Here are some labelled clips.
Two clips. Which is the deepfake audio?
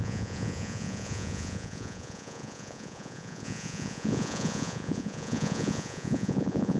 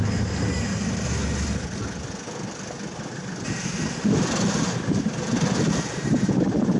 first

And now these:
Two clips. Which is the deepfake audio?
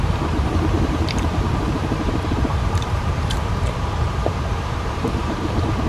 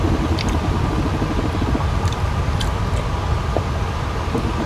first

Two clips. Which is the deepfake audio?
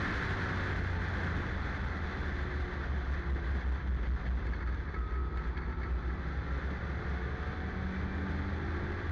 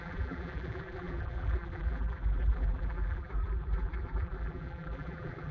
second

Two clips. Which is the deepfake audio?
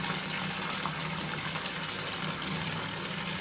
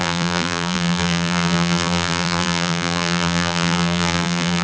second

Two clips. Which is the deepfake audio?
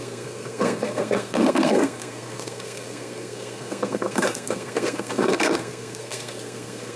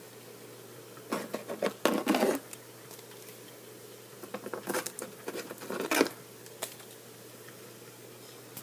first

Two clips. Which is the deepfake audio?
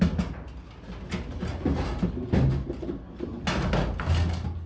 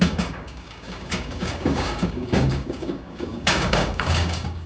second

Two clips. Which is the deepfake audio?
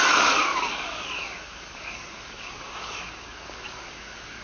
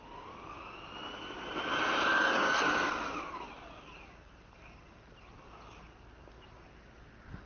first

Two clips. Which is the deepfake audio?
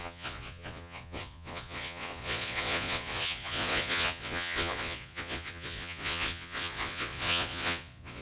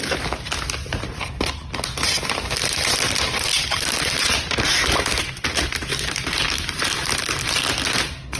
first